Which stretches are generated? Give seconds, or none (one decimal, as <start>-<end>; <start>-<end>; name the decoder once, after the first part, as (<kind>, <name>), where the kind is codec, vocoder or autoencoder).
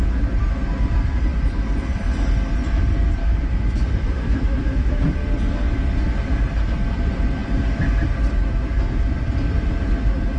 3.2-5.0 (autoencoder, DAC-VAE)